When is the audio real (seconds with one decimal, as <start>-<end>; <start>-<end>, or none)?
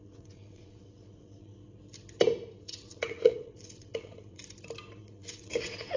1.5-2.6; 4.4-4.9